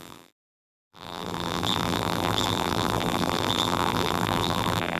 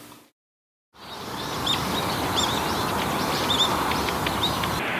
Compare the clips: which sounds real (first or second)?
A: second